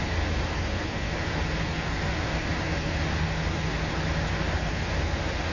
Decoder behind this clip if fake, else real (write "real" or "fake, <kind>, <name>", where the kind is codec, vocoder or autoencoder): real